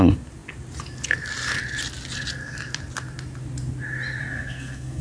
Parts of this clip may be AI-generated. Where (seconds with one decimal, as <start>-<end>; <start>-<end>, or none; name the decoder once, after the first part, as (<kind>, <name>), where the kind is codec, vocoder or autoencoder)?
4.2-5.0 (codec, SNAC)